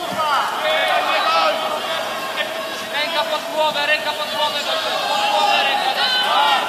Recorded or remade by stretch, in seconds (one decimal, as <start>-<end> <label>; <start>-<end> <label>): 0.0-6.7 recorded

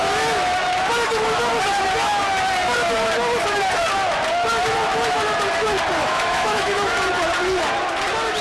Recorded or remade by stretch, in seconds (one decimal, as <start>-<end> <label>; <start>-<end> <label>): 0.0-6.0 recorded; 6.0-6.9 remade; 6.9-8.4 recorded

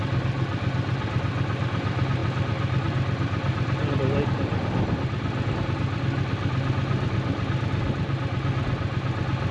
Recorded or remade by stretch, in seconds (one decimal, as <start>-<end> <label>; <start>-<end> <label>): 0.0-9.5 recorded

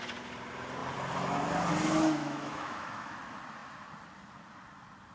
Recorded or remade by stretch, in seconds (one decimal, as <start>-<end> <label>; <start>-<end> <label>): 0.0-2.2 recorded; 2.2-3.2 remade; 3.2-5.1 recorded

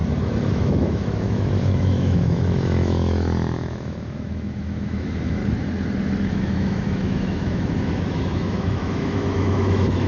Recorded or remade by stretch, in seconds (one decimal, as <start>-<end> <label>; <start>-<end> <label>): 0.0-0.5 recorded; 0.5-5.4 remade; 5.4-6.3 recorded; 6.3-10.1 remade

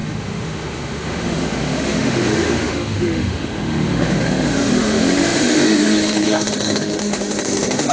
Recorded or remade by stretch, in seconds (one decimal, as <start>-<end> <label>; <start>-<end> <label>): 0.0-7.9 remade

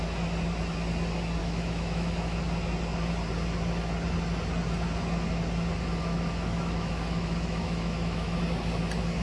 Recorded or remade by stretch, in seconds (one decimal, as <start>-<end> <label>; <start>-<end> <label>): 0.0-1.4 recorded; 1.4-2.4 remade; 2.4-6.0 recorded; 6.0-8.4 remade; 8.4-9.2 recorded